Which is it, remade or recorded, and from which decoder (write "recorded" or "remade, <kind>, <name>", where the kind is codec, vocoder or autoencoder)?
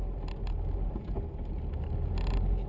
recorded